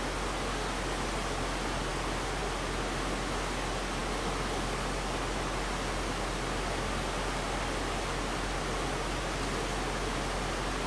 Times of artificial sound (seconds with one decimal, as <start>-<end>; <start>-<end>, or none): none